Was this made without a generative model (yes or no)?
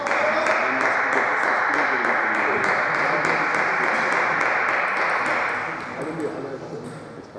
yes